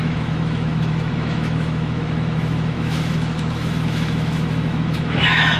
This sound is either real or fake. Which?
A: fake